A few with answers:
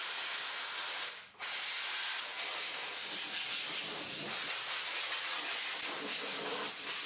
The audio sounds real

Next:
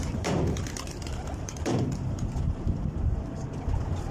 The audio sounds fake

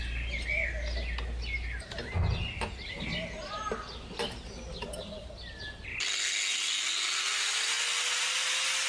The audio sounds real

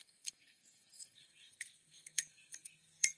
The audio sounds fake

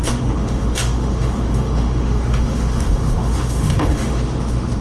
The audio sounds fake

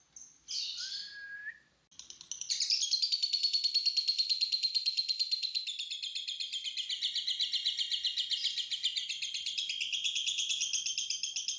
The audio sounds real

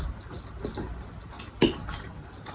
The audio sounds real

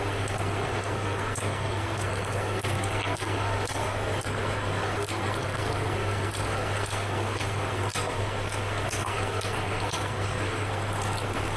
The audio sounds fake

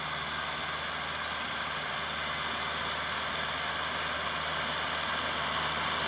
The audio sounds real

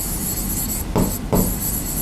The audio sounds real